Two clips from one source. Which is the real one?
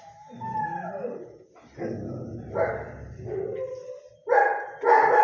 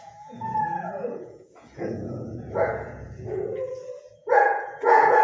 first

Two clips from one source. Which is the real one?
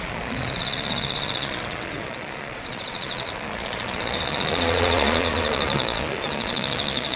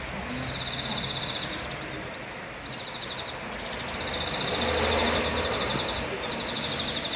second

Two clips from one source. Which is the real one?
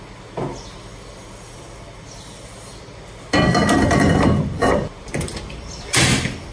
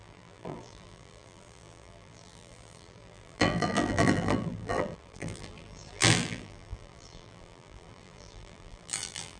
first